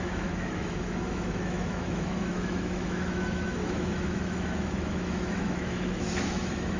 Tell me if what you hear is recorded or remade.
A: remade